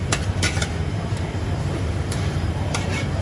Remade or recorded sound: remade